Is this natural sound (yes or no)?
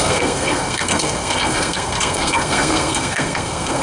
no